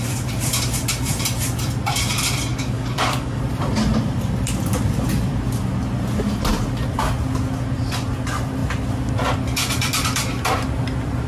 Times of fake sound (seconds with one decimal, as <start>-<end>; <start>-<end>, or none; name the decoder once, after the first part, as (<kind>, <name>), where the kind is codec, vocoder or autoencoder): 2.5-3.4 (codec, DAC)